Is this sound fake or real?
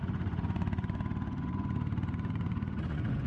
fake